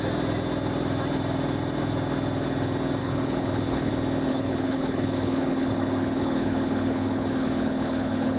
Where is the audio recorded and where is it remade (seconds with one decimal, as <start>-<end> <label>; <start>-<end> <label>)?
0.0-3.0 recorded; 3.0-3.9 remade; 3.9-4.3 recorded; 4.3-8.4 remade